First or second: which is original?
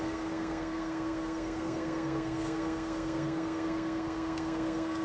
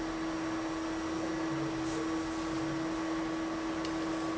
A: second